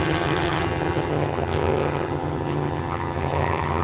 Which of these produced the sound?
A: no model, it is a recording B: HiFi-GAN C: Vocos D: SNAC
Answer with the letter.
B